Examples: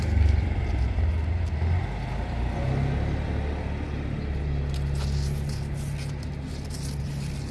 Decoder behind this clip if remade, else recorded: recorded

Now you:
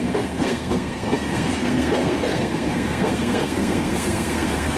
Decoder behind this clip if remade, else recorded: remade, codec, SNAC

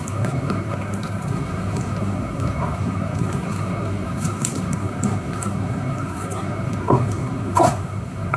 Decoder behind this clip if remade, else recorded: remade, codec, SNAC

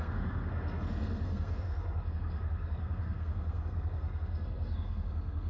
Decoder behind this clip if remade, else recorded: remade, codec, SNAC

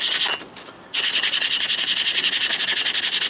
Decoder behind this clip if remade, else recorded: recorded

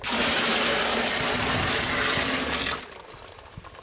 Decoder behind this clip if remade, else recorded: recorded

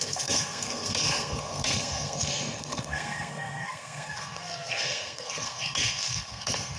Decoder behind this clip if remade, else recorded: remade, codec, SNAC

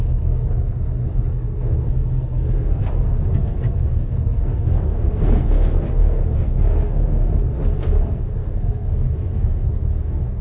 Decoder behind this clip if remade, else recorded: remade, codec, SNAC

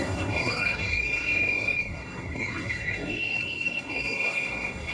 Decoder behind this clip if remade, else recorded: remade, codec, SNAC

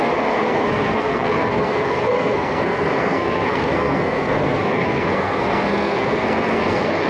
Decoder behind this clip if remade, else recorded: remade, codec, SNAC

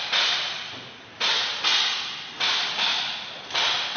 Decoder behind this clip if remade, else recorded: recorded